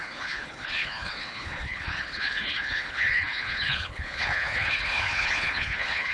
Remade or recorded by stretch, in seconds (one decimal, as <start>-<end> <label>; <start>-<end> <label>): 0.0-6.1 remade